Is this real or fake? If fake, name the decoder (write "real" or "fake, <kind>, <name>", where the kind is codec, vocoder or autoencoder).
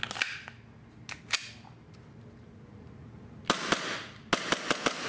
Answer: real